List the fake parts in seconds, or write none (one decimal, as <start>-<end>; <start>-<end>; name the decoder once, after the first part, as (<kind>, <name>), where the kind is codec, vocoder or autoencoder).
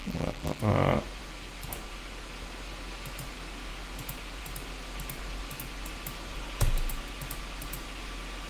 0.0-0.6 (vocoder, BigVGAN v2)